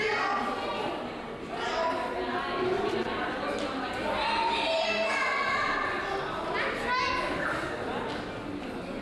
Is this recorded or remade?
recorded